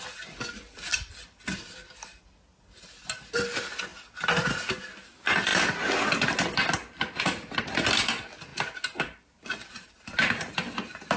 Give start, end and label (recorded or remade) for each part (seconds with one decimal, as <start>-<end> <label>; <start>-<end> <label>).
0.0-11.2 recorded